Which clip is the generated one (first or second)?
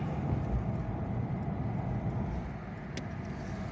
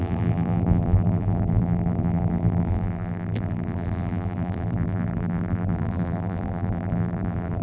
second